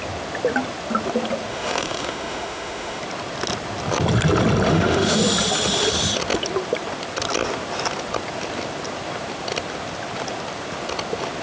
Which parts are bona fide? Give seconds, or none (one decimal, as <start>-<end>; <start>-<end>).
0.0-1.5; 3.0-4.7; 5.2-11.4